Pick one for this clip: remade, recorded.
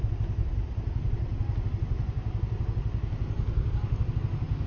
recorded